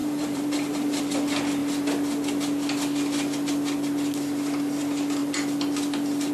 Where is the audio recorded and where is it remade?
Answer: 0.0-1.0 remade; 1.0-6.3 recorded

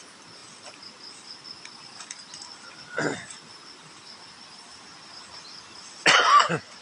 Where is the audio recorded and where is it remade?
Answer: 0.0-6.8 recorded